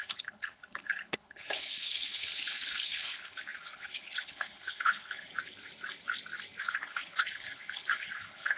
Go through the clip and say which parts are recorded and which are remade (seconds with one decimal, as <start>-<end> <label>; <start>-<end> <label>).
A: 0.0-5.3 remade; 5.3-6.6 recorded; 6.6-8.6 remade